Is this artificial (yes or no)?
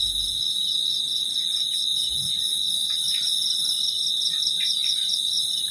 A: no